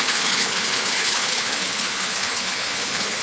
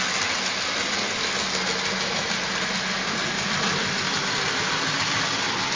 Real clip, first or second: second